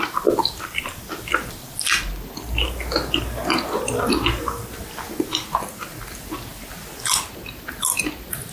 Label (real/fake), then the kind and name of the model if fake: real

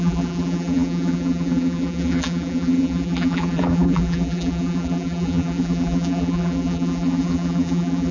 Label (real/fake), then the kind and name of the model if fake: fake, vocoder, BigVGAN v2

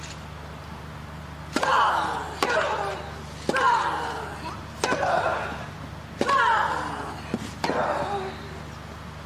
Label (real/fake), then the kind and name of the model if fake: real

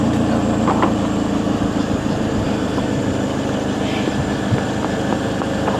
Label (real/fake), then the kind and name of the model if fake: fake, vocoder, BigVGAN v2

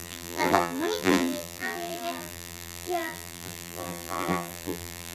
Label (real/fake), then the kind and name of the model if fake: fake, vocoder, BigVGAN v2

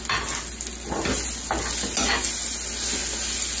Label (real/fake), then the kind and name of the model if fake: real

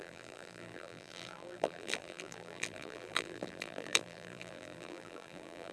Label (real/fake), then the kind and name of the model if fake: fake, vocoder, BigVGAN v2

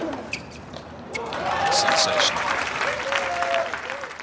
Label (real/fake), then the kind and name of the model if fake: fake, vocoder, BigVGAN v2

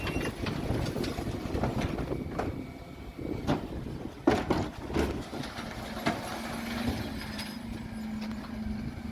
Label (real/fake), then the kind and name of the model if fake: real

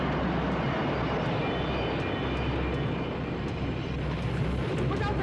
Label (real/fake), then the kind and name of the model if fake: real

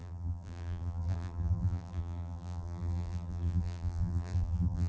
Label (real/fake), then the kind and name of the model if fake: fake, vocoder, BigVGAN v2